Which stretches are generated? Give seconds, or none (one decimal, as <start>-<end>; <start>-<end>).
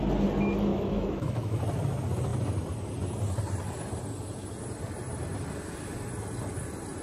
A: 0.7-1.6